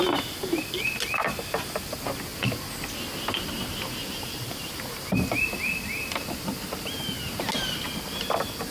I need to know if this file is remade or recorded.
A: recorded